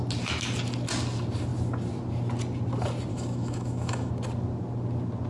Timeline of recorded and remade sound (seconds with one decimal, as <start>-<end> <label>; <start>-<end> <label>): 0.0-3.1 recorded; 3.1-4.1 remade; 4.1-5.3 recorded